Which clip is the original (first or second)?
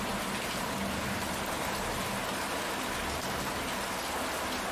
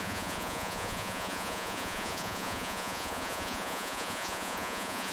first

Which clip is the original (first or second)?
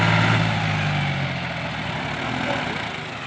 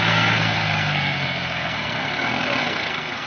first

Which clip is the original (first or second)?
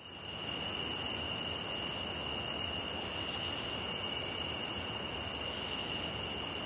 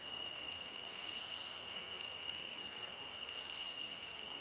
first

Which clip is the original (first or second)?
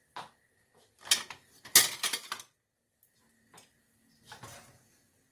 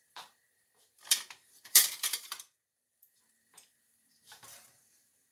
first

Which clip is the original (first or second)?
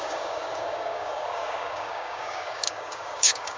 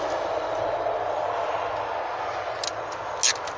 second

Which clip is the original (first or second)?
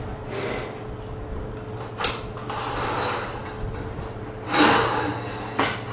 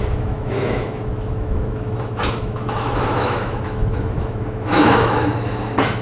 first